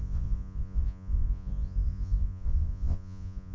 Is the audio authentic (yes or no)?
no